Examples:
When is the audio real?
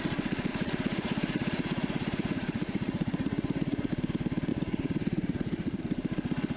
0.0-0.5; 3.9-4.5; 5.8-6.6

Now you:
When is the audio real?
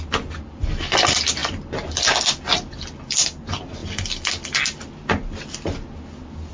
0.0-6.5